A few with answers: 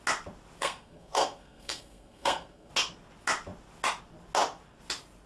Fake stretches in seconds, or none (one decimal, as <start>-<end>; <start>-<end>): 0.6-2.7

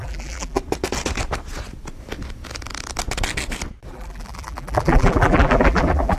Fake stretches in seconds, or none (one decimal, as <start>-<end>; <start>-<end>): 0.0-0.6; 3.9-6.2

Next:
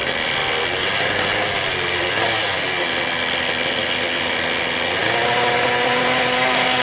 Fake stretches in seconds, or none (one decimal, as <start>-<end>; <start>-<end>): 0.0-2.9

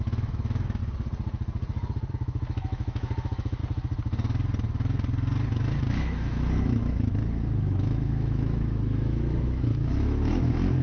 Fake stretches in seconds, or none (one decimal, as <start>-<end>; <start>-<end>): 0.0-0.8; 2.1-3.6; 5.9-10.8

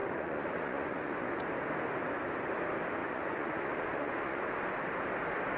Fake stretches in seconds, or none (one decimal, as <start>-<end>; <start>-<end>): 0.0-1.4; 3.0-4.4

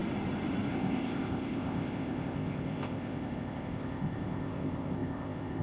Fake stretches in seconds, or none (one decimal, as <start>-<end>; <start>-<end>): 0.7-5.6

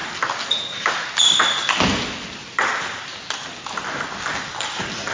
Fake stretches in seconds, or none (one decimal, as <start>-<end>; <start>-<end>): none

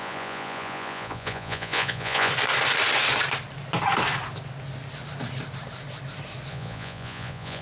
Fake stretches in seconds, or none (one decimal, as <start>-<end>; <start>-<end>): 0.0-2.3; 6.5-7.6